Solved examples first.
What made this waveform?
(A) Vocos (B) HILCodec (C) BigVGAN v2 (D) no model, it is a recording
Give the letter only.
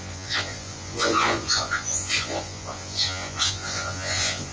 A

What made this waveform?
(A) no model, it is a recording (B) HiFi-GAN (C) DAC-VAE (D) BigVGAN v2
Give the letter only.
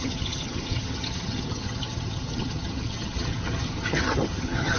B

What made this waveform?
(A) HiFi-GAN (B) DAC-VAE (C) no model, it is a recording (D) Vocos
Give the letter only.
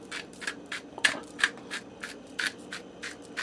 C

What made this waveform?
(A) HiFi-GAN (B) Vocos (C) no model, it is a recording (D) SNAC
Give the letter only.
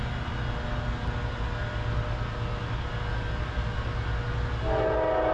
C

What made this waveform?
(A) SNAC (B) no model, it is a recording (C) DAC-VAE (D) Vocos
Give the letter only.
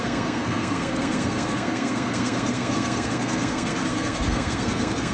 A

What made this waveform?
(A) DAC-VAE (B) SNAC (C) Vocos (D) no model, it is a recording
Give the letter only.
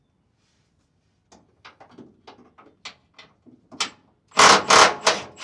D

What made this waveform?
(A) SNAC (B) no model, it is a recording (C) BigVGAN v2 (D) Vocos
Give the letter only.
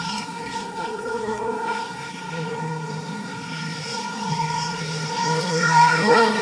A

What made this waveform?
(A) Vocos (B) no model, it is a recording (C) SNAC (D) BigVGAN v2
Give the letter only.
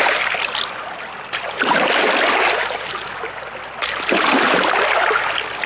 B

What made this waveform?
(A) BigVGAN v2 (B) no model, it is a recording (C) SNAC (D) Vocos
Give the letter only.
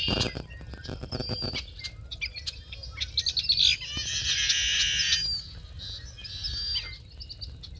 B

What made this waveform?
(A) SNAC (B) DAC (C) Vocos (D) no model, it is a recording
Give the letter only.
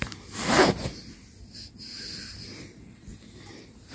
D